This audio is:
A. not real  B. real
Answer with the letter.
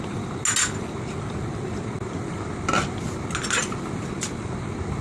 B